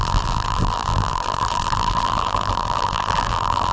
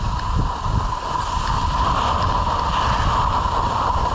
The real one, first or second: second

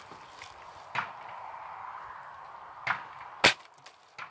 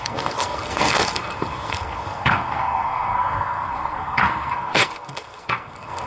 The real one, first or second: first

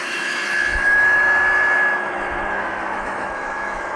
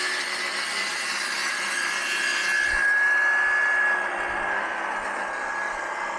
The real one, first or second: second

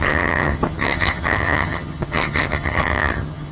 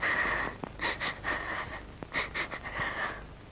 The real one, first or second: second